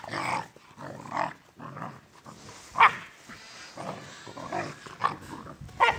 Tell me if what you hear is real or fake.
real